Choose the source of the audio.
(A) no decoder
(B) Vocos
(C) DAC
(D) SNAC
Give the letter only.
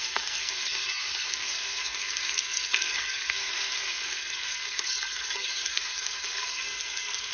D